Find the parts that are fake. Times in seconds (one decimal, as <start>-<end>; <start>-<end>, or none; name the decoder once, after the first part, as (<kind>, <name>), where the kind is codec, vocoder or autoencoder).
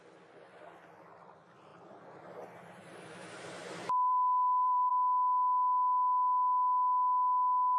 1.7-4.9 (vocoder, BigVGAN v2)